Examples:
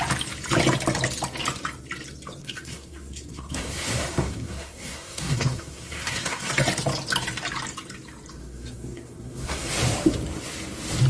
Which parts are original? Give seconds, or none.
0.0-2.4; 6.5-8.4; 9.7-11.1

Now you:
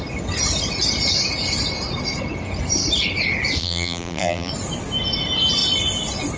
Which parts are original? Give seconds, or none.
0.0-3.6; 4.5-6.4

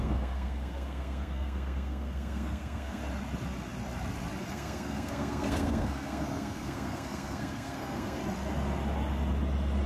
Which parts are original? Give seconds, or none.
3.0-4.5; 8.2-9.9

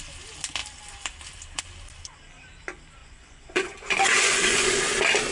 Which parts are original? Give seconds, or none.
0.0-3.0; 4.8-5.3

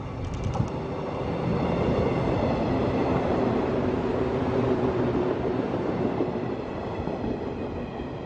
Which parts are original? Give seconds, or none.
0.0-1.5; 2.0-2.8; 6.3-8.3